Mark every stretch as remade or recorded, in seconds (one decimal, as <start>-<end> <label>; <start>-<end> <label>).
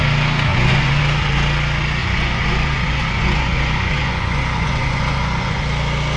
0.0-0.5 recorded; 0.5-1.0 remade; 1.0-2.0 recorded; 2.0-5.6 remade; 5.6-6.2 recorded